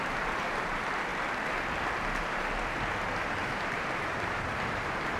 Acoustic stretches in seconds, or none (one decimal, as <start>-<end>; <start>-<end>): 1.1-2.2